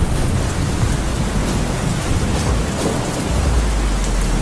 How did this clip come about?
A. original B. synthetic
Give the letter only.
A